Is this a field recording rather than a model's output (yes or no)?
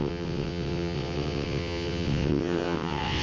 no